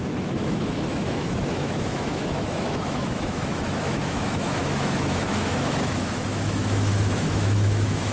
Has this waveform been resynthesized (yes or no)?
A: yes